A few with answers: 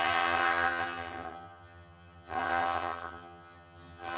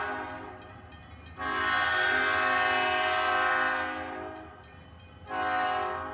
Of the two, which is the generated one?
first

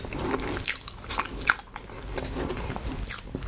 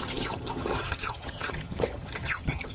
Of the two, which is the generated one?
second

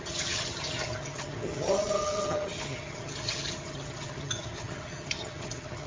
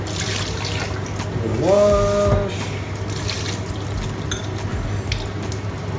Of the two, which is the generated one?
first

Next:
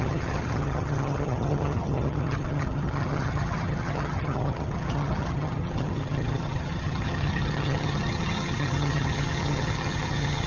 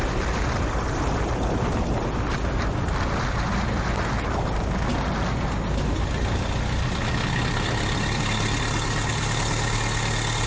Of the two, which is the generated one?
first